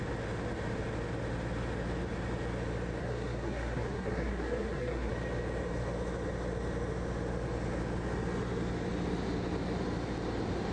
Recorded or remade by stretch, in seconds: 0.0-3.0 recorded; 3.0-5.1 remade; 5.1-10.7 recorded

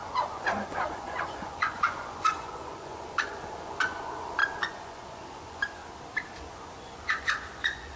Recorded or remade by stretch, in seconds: 0.0-5.8 remade; 5.8-6.4 recorded; 6.4-8.0 remade